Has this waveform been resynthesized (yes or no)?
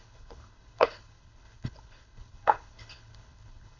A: yes